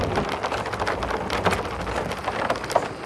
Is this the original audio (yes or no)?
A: yes